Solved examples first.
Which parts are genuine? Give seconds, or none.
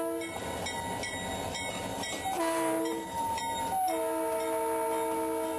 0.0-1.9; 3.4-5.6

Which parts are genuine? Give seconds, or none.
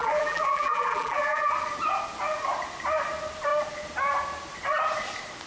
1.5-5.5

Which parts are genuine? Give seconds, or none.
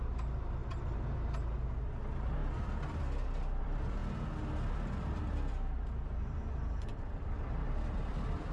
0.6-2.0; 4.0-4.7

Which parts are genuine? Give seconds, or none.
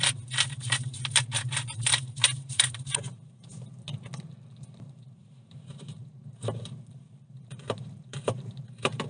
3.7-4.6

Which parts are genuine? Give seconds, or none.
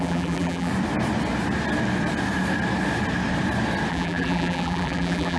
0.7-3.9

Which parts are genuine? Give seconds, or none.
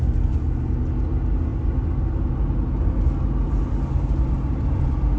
0.0-5.2